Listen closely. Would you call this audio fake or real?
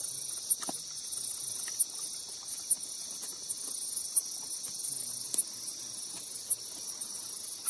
real